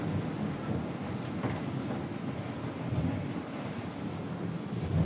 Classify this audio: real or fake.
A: real